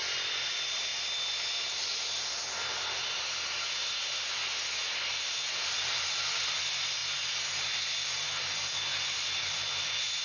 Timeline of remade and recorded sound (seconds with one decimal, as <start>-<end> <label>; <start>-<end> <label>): 0.0-0.5 recorded; 0.5-0.9 remade; 0.9-5.7 recorded; 5.7-7.0 remade; 7.0-7.6 recorded; 7.6-10.2 remade